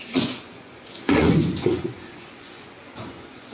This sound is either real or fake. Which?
fake